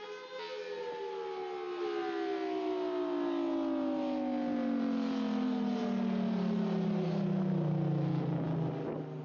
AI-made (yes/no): no